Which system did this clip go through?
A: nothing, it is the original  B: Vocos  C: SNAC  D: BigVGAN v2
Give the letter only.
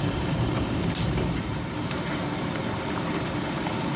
D